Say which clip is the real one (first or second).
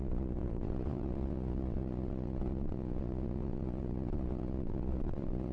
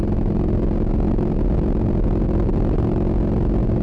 second